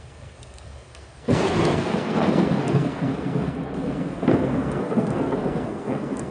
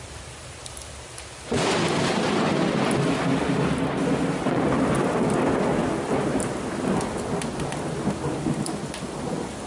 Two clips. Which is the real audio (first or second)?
second